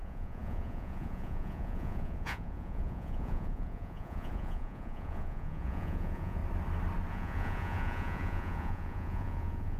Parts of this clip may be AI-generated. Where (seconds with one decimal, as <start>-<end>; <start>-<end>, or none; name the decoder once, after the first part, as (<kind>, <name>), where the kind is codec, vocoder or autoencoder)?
0.0-6.4 (vocoder, Vocos); 7.1-9.8